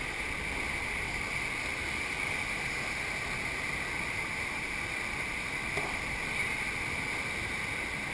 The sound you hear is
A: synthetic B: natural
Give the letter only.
B